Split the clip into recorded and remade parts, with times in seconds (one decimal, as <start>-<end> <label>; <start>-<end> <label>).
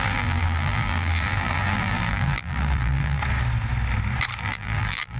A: 0.0-3.2 remade; 3.2-4.4 recorded; 4.4-5.2 remade